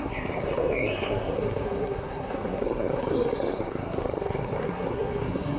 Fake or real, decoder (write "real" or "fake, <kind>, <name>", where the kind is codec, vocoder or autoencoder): fake, codec, SNAC